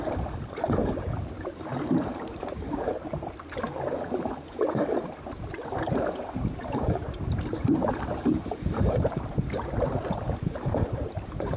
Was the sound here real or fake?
fake